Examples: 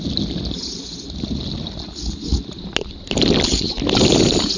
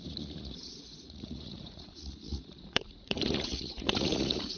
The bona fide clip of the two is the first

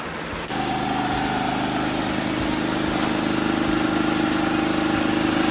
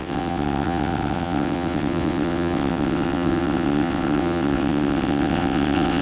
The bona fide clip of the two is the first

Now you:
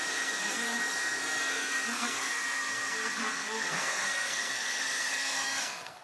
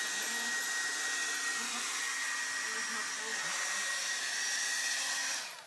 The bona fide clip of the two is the second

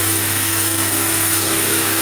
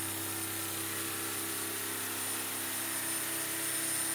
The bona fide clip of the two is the second